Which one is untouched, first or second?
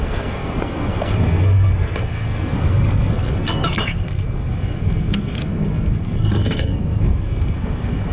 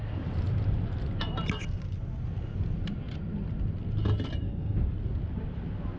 second